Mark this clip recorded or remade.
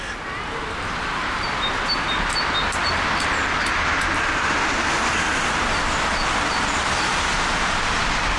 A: recorded